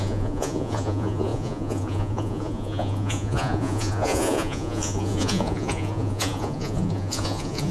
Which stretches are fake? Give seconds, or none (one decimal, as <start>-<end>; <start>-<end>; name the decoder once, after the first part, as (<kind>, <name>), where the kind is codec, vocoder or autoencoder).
0.0-7.7 (vocoder, Vocos)